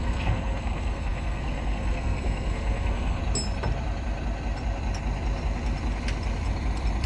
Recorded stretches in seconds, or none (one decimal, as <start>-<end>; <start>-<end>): 3.2-7.1